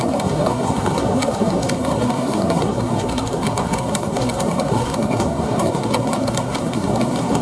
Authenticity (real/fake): fake